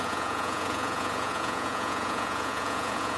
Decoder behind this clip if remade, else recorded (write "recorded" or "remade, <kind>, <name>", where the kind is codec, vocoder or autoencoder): remade, vocoder, Vocos